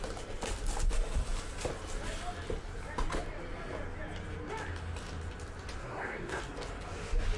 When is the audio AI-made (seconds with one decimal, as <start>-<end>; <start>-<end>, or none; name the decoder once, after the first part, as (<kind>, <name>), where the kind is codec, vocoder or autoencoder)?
5.8-6.4 (codec, SNAC)